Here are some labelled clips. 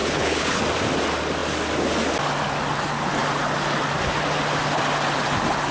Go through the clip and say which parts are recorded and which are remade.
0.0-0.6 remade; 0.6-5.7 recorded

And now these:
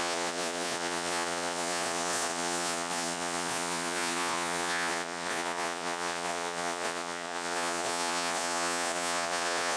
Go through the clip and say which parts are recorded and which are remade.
0.0-9.8 remade